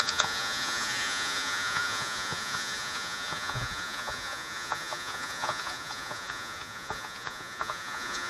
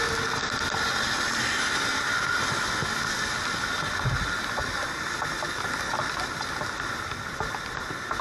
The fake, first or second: first